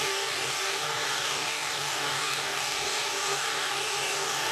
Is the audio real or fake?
fake